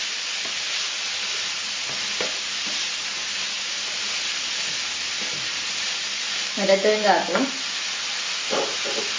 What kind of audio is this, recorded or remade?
recorded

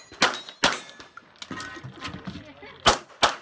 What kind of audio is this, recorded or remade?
recorded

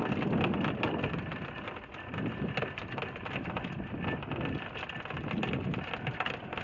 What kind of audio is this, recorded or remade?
recorded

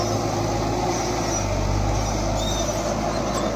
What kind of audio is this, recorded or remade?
recorded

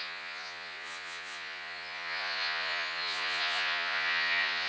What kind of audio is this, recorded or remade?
remade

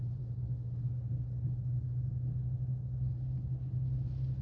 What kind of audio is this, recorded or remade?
recorded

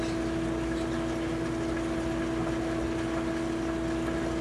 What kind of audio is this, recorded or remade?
recorded